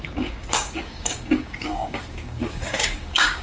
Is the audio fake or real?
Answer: fake